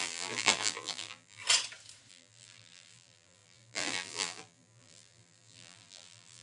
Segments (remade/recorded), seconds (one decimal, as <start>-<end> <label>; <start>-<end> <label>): 0.0-1.4 remade; 1.4-2.1 recorded; 2.1-6.4 remade

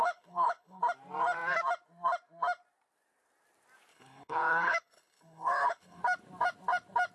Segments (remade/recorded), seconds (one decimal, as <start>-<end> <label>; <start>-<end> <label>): 0.0-0.8 remade; 0.8-3.9 recorded; 3.9-6.0 remade; 6.0-7.1 recorded

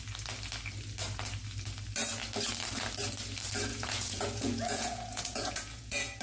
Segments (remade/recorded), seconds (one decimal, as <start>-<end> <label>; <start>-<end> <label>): 0.0-3.7 recorded; 3.7-6.2 remade

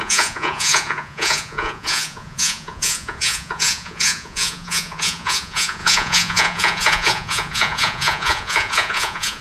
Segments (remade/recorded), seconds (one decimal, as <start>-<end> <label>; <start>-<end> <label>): 0.0-9.4 remade

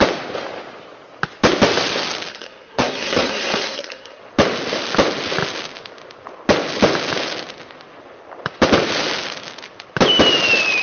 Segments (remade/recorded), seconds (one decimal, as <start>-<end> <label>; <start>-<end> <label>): 0.0-2.3 recorded; 2.3-4.2 remade; 4.2-10.8 recorded

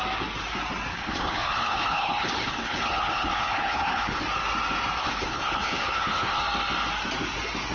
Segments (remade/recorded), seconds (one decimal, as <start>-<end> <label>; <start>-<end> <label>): 0.0-0.9 recorded; 0.9-4.2 remade; 4.2-5.0 recorded; 5.0-6.4 remade; 6.4-7.7 recorded

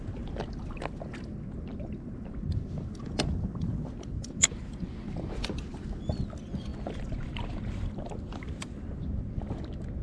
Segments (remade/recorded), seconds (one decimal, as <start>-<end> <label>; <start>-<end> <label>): 0.0-6.7 recorded; 6.7-9.0 remade; 9.0-10.0 recorded

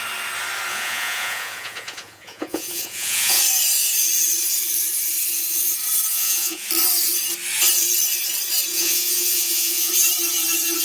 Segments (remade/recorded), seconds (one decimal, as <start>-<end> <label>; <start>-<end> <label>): 0.0-0.7 recorded; 0.7-3.4 remade; 3.4-6.1 recorded; 6.1-6.7 remade; 6.7-8.7 recorded; 8.7-9.9 remade; 9.9-10.8 recorded